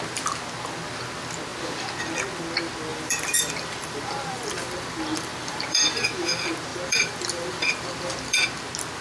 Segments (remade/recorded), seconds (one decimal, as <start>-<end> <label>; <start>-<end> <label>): 0.0-2.9 recorded; 2.9-6.0 remade; 6.0-6.7 recorded; 6.7-8.6 remade; 8.6-9.0 recorded